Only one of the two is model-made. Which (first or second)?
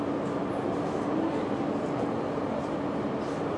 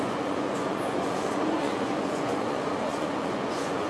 second